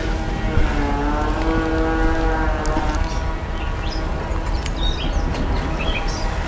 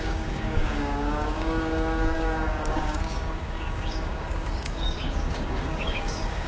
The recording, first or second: first